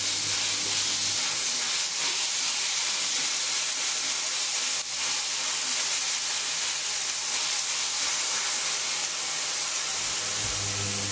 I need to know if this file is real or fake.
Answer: real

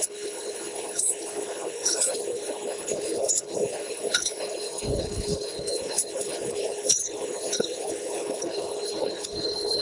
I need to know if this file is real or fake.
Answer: fake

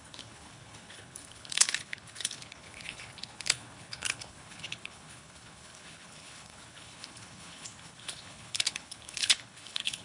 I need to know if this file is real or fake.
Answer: fake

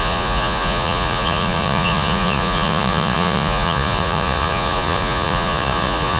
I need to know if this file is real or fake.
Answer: fake